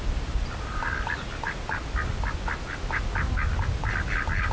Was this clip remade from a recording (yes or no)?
no